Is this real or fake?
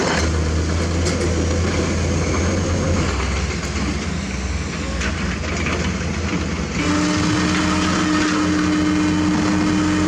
real